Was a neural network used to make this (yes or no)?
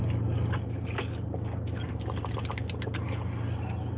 no